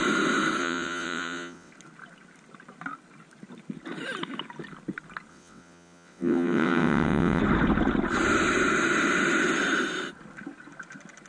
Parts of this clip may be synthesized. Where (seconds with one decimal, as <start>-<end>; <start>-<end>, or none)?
0.6-1.7; 5.3-7.4